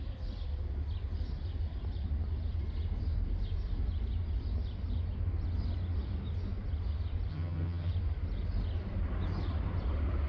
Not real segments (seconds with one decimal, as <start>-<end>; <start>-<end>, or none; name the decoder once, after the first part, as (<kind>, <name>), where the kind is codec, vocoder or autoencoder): 7.3-7.9 (vocoder, HiFi-GAN)